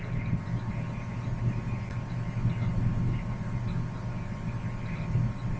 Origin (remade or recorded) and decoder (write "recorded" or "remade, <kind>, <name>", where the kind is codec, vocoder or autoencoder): recorded